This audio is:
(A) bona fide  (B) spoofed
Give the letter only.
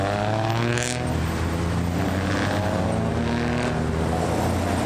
A